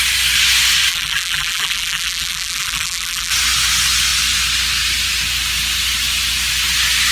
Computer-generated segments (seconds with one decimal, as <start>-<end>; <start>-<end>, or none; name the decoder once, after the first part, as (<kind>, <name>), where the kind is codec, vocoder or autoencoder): 0.9-3.3 (vocoder, BigVGAN v2)